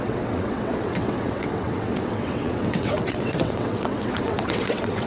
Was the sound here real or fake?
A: fake